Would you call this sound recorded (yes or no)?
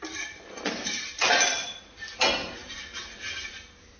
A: yes